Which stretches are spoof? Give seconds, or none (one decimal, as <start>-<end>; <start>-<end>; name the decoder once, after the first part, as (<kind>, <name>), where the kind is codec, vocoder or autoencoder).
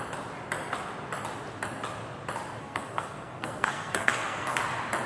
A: 2.6-4.6 (codec, SNAC)